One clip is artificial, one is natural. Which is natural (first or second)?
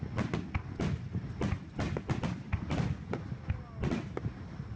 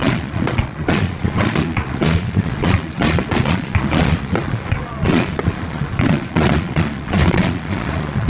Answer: first